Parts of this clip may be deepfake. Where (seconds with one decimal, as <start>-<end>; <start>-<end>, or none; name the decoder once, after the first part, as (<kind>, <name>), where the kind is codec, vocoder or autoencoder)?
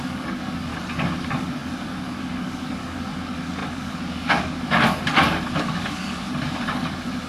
0.0-0.7 (codec, DAC); 1.2-7.3